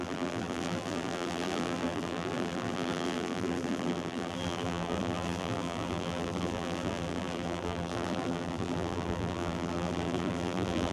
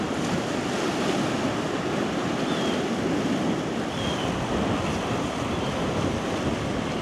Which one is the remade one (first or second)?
first